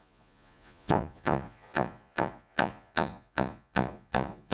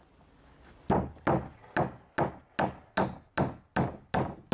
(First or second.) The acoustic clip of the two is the second